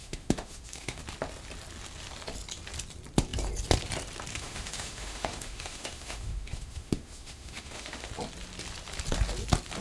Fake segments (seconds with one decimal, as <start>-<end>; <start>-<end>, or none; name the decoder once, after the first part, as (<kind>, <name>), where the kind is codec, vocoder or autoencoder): 0.0-1.0 (autoencoder, DAC-VAE); 4.3-8.1